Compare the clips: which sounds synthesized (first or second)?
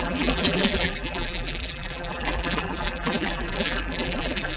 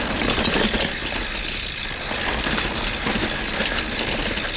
first